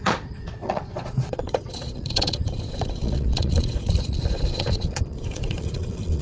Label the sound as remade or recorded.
remade